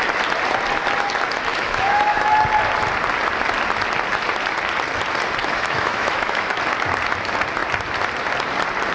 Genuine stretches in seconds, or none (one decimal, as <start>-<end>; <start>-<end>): 0.0-1.5; 2.4-5.4; 6.5-8.9